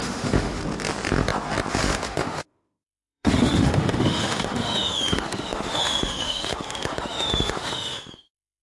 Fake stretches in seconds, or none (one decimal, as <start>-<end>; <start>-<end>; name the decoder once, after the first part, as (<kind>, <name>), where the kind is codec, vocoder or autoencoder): 0.0-0.6 (autoencoder, DAC-VAE); 1.7-8.6